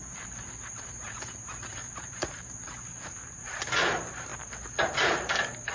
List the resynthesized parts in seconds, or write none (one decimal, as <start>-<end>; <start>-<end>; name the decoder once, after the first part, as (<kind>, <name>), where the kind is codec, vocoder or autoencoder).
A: 0.0-5.7 (vocoder, BigVGAN v2)

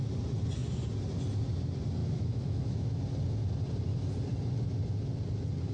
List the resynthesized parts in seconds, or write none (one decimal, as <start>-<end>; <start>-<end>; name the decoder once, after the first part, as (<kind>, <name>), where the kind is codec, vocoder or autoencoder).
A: 2.0-3.0 (autoencoder, DAC-VAE)

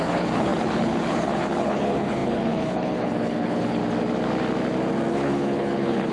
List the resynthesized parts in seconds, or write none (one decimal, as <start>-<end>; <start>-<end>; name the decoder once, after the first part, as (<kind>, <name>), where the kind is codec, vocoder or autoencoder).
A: 0.0-3.8 (codec, HILCodec); 5.1-6.1

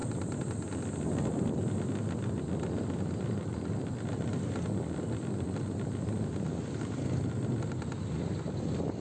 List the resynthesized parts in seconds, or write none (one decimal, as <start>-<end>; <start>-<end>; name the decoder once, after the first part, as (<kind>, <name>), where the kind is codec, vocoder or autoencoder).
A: none

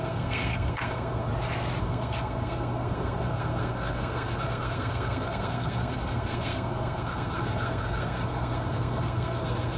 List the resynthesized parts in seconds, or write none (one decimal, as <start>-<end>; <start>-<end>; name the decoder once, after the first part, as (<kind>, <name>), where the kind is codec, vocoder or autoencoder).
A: 0.0-1.3 (codec, SNAC); 1.8-9.8

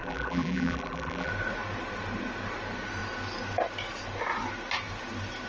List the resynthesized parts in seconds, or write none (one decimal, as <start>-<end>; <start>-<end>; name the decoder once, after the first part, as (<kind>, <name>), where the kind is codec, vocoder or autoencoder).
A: 0.0-1.3 (vocoder, BigVGAN v2)